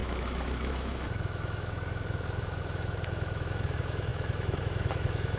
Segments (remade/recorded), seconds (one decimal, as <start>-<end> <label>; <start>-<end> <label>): 0.0-5.4 remade

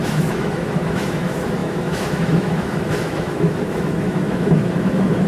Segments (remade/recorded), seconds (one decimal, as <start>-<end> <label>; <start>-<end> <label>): 0.0-5.3 remade

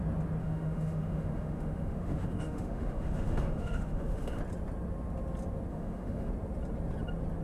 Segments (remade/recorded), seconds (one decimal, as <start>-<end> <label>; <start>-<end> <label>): 0.0-0.4 recorded; 0.4-4.4 remade; 4.4-5.7 recorded; 5.7-6.3 remade; 6.3-7.4 recorded

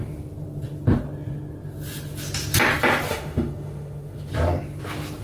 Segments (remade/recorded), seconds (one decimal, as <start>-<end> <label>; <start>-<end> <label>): 0.0-3.1 recorded; 3.1-4.3 remade; 4.3-5.2 recorded

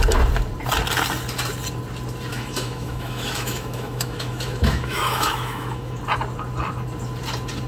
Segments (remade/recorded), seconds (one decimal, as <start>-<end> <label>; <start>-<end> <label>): 0.0-2.3 recorded; 2.3-6.0 remade; 6.0-7.7 recorded

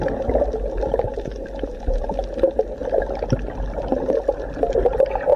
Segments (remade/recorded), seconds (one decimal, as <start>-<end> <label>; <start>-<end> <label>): 0.0-5.4 recorded

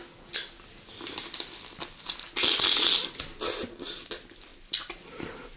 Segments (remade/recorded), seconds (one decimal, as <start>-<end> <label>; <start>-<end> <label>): 0.0-5.6 recorded

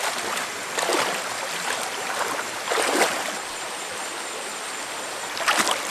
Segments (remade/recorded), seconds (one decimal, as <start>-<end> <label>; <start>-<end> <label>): 0.0-5.9 recorded